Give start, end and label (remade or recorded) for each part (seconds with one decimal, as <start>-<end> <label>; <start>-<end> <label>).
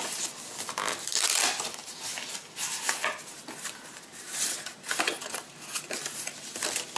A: 0.0-7.0 recorded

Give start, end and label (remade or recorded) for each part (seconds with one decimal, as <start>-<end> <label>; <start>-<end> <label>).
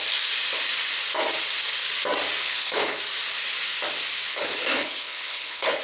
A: 0.0-2.4 recorded; 2.4-3.0 remade; 3.0-4.3 recorded; 4.3-5.8 remade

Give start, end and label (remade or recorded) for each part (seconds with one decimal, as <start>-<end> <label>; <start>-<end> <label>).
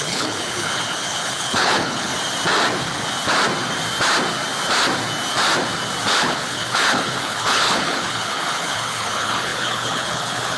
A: 0.0-2.1 remade; 2.1-6.2 recorded; 6.2-10.6 remade